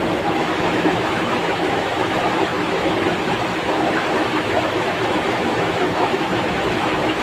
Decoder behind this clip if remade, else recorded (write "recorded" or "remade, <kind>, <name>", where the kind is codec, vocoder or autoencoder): remade, autoencoder, DAC-VAE